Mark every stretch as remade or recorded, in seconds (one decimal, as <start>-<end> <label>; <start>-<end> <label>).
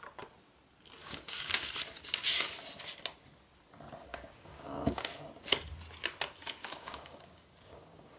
0.0-1.0 recorded; 1.0-1.7 remade; 1.7-4.1 recorded; 4.1-5.2 remade; 5.2-6.6 recorded; 6.6-8.2 remade